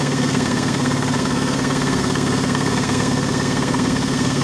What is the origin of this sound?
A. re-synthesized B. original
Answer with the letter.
A